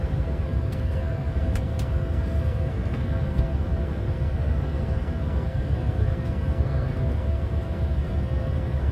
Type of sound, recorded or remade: remade